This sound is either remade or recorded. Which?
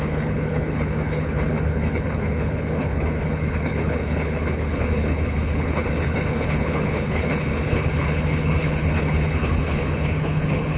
remade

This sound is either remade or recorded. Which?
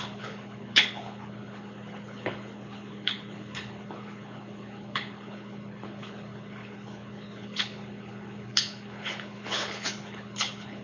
remade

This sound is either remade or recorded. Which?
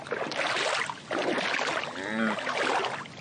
recorded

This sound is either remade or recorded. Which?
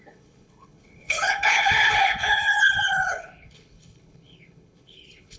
remade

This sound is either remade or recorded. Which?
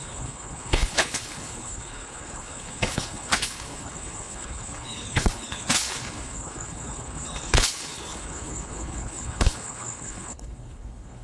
remade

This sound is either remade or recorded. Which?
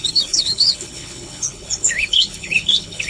remade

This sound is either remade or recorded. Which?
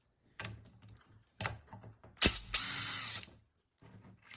recorded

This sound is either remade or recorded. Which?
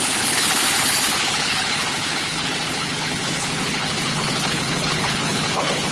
remade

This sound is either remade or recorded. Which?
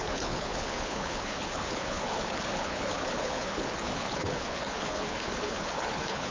remade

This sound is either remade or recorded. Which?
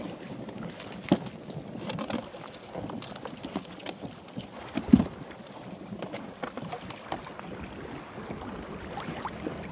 recorded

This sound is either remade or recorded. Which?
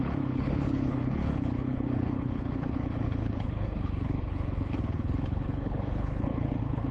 remade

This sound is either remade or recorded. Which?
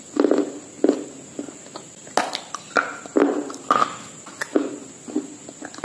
recorded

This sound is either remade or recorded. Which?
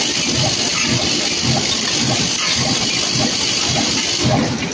recorded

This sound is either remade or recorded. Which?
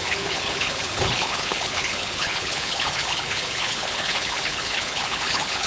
remade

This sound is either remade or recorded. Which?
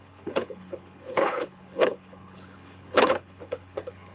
remade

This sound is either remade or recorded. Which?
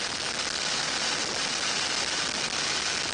recorded